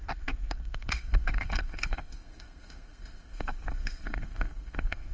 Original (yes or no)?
no